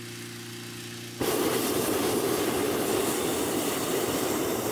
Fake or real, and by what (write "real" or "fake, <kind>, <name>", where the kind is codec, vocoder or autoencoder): real